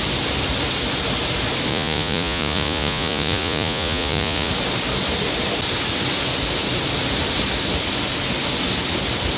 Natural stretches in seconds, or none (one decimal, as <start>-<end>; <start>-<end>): 0.0-1.7; 4.5-9.4